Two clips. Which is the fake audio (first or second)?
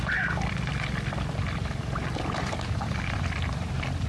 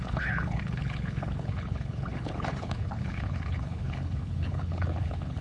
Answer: second